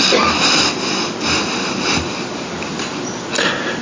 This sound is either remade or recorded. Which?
recorded